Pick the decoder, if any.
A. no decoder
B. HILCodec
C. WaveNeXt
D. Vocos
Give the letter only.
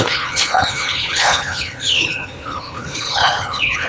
B